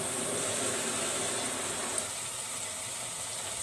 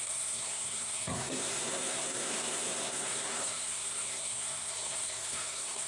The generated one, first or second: second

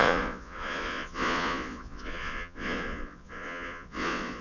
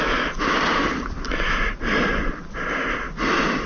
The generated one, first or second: first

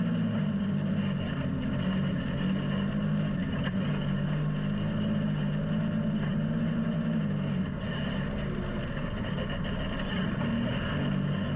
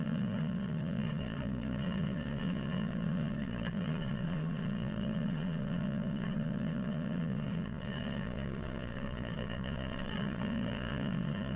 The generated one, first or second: second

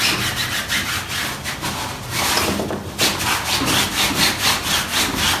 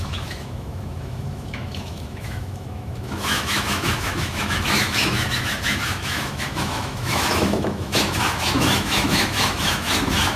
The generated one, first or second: second